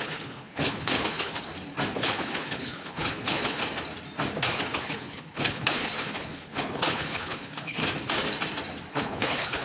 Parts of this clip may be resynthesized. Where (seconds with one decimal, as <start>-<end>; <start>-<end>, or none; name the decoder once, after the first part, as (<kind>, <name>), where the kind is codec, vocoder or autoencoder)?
0.0-1.5 (codec, HILCodec); 2.0-3.6; 4.4-7.8; 8.9-9.6